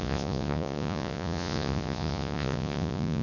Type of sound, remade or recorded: remade